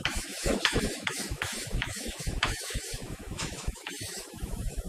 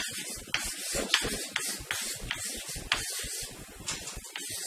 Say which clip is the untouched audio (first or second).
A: second